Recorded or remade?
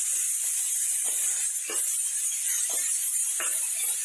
recorded